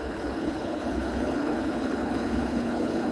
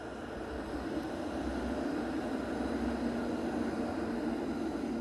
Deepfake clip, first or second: first